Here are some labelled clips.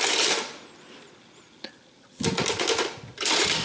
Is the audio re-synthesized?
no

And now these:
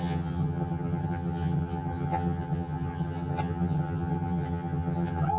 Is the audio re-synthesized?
yes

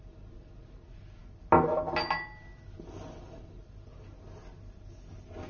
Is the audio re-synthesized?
no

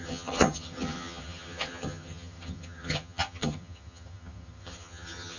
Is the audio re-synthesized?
yes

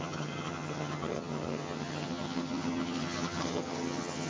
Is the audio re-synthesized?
yes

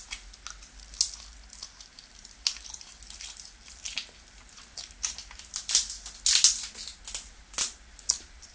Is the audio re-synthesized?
no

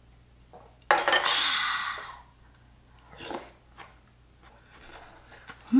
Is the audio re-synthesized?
no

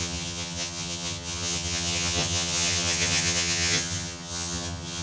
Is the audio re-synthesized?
yes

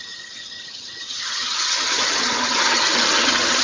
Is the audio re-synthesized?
yes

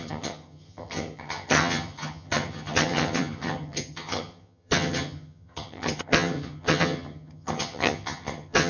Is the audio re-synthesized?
yes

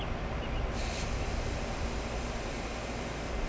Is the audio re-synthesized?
no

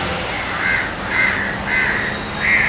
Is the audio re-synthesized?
no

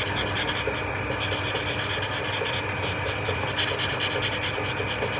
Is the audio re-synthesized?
no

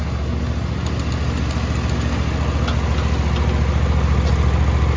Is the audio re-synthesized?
no